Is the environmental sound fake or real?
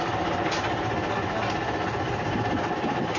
real